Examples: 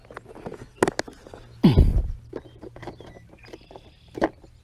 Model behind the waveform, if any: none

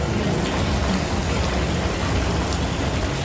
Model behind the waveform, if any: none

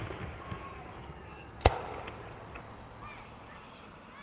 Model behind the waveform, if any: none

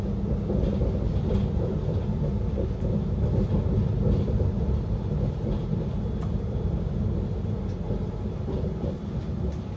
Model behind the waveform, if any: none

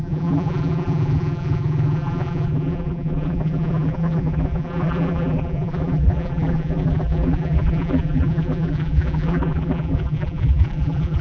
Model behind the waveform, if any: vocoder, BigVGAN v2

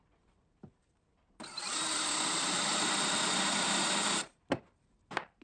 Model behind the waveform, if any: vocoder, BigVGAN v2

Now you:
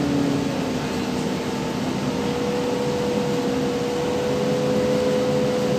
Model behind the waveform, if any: none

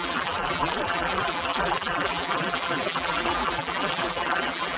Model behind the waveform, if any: vocoder, BigVGAN v2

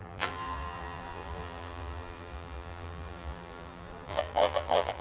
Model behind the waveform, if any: vocoder, BigVGAN v2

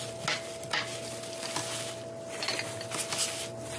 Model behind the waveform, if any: none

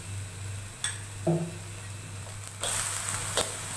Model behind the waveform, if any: none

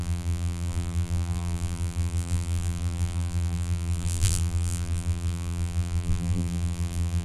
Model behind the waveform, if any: vocoder, BigVGAN v2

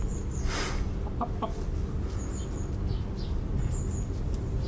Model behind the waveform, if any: none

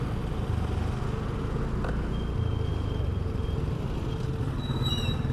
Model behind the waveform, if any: none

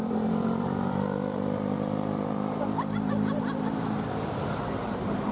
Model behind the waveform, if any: vocoder, BigVGAN v2